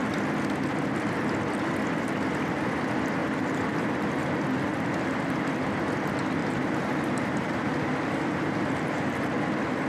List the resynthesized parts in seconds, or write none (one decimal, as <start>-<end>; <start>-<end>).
3.2-3.7; 4.7-5.2; 6.4-7.5